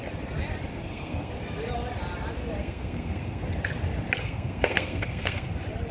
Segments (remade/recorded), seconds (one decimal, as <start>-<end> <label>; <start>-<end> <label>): 0.0-0.7 recorded; 0.7-1.3 remade; 1.3-2.6 recorded; 2.6-3.4 remade; 3.4-4.2 recorded; 4.2-5.5 remade; 5.5-5.9 recorded